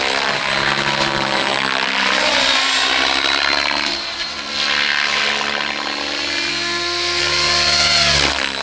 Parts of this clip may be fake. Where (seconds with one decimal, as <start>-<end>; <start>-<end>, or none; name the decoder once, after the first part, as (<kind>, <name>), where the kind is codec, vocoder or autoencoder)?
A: 6.5-7.2 (codec, SNAC)